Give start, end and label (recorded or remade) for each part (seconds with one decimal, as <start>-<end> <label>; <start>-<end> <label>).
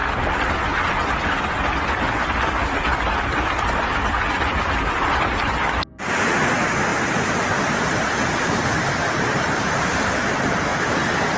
0.0-11.4 recorded